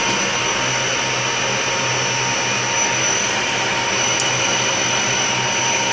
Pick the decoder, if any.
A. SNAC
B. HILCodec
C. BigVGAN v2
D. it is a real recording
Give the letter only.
D